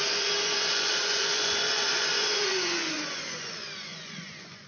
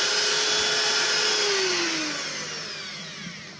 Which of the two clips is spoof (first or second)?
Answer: first